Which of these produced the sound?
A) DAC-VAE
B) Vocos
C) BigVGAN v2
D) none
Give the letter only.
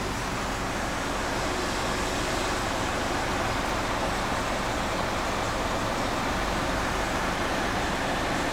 D